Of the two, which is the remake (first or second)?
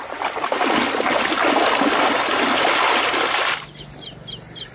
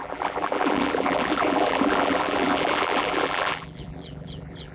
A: second